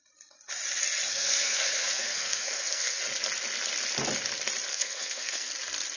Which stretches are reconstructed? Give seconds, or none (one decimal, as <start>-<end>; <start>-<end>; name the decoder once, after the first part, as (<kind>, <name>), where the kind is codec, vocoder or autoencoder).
1.1-3.0 (codec, SNAC); 4.7-5.5